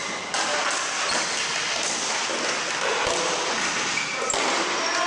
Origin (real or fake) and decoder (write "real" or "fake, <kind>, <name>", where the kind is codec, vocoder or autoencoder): real